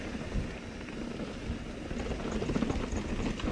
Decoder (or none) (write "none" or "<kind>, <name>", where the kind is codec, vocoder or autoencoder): none